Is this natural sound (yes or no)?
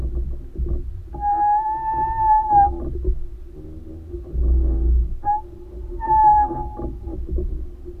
yes